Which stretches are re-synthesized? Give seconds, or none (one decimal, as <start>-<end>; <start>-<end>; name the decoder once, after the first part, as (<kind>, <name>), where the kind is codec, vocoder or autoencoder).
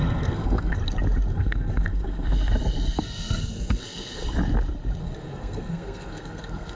0.0-0.8 (codec, SNAC); 1.3-4.2; 5.0-6.8